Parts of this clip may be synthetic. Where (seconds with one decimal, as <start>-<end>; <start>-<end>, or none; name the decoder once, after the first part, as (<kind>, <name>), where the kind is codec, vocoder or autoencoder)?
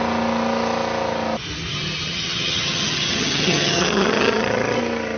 1.7-4.8 (vocoder, HiFi-GAN)